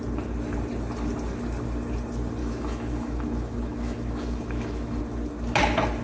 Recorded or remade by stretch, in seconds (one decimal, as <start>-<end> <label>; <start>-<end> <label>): 0.0-2.4 recorded; 2.4-5.0 remade; 5.0-6.0 recorded